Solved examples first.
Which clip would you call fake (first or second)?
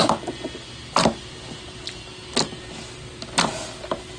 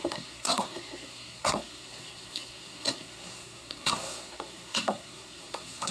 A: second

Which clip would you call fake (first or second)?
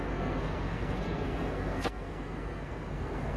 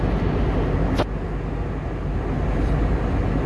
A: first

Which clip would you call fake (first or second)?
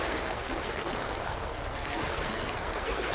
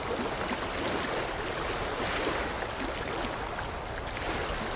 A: first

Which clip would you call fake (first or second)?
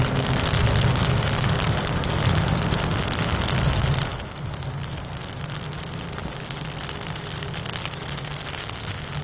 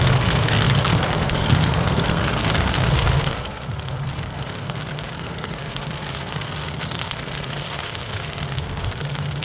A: second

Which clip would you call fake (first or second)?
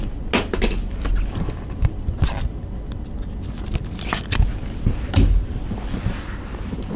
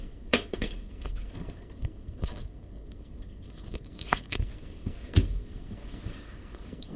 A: second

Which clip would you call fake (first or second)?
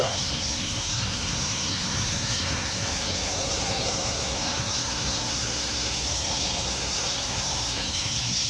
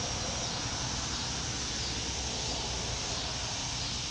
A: first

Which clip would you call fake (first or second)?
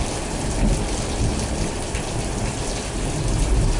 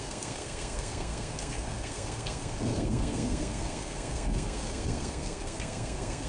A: second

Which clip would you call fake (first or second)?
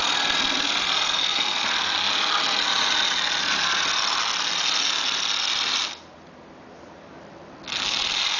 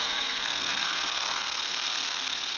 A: second